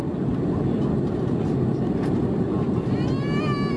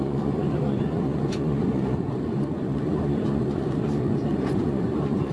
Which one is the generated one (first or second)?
second